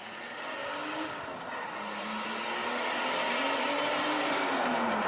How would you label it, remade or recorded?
recorded